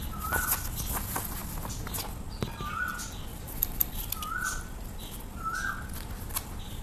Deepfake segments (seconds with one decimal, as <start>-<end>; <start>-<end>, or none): 3.3-4.1